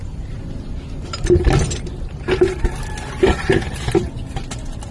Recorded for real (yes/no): yes